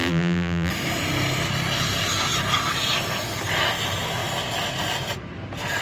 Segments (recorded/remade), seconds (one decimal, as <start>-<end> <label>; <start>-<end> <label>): 0.0-0.7 remade; 0.7-5.8 recorded